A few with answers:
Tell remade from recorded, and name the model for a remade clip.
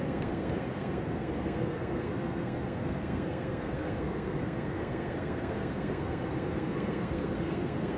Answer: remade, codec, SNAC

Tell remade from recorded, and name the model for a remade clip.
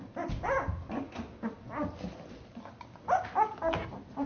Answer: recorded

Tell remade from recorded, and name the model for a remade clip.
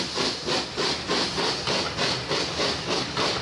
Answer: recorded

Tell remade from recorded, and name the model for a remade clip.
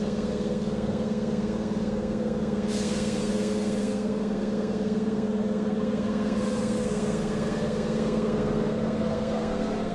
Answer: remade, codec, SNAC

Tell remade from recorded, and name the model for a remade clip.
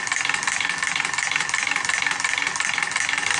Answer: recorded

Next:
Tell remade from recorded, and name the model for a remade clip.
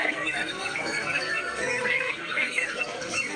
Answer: remade, codec, SNAC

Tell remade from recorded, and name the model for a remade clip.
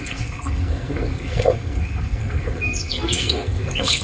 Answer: remade, codec, SNAC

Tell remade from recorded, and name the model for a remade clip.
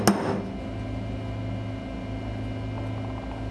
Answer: recorded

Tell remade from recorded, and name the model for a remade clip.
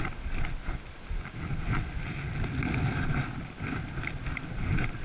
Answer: recorded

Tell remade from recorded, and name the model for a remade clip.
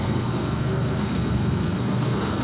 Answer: remade, codec, SNAC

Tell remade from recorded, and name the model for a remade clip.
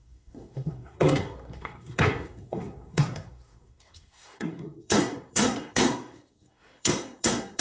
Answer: remade, codec, SNAC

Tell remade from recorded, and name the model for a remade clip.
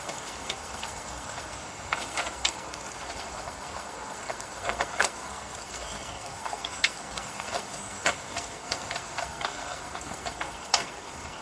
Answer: remade, codec, SNAC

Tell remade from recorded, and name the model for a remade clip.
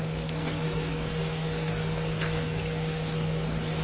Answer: remade, codec, SNAC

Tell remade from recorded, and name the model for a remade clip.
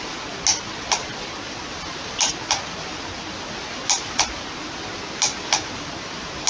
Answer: recorded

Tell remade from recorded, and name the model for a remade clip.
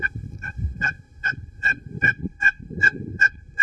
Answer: remade, codec, SNAC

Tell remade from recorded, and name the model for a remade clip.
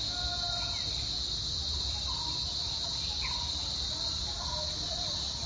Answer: recorded